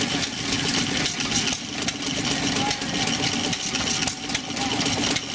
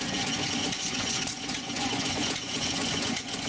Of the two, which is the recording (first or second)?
first